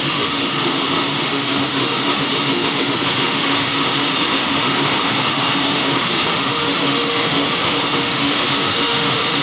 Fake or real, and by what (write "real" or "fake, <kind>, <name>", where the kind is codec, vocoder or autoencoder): fake, autoencoder, DAC-VAE